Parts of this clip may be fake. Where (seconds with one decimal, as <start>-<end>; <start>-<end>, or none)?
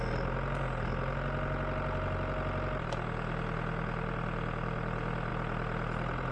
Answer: none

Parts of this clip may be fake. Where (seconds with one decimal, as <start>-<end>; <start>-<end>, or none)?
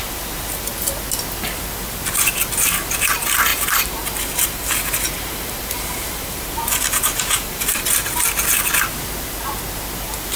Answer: 3.5-7.8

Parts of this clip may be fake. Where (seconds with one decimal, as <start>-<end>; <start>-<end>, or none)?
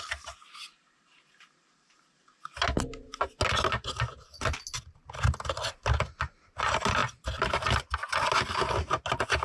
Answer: none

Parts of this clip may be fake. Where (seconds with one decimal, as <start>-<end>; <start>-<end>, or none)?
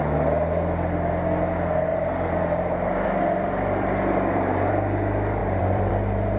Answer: 1.9-4.7; 5.4-5.9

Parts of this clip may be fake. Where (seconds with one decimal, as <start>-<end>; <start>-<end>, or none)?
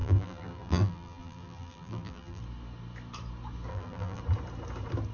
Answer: 0.0-2.4; 3.7-4.2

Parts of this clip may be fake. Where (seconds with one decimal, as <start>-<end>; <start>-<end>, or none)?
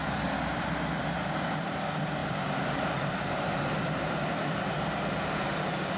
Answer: 2.2-6.0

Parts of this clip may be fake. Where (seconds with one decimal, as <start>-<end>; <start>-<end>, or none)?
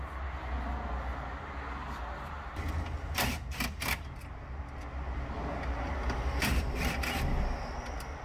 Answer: 1.8-2.6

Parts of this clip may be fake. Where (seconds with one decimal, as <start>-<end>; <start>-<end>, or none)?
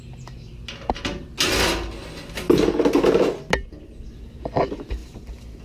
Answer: 5.0-5.6